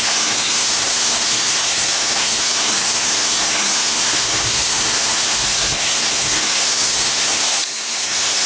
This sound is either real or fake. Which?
fake